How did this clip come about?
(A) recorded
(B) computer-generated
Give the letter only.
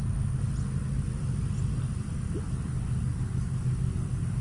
A